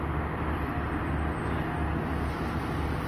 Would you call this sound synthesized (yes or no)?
no